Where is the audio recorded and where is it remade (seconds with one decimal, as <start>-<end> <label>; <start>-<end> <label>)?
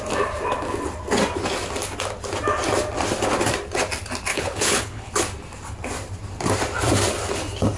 0.0-4.3 recorded; 4.3-5.1 remade; 5.1-7.8 recorded